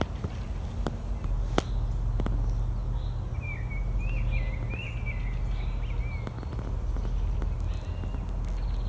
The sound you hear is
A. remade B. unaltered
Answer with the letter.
B